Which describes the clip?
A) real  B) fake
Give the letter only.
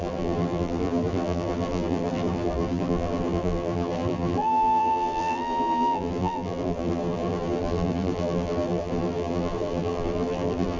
B